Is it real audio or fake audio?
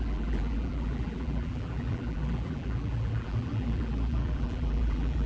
fake